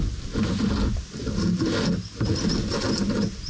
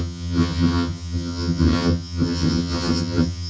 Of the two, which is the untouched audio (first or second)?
first